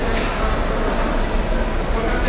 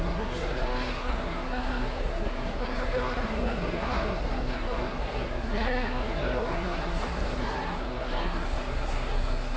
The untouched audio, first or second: first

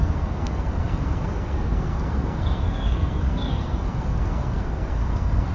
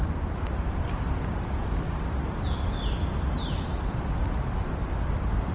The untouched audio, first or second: second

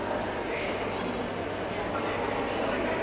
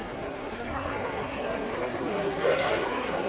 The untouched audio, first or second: first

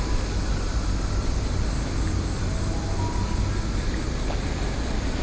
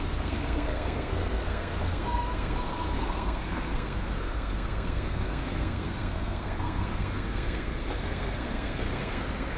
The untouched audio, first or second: first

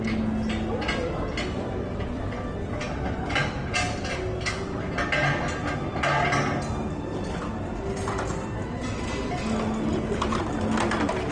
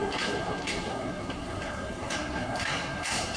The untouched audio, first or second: first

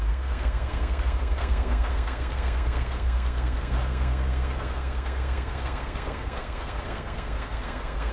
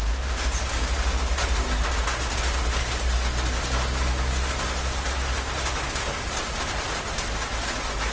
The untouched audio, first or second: second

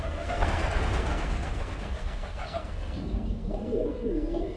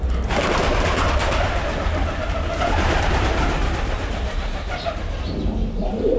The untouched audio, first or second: second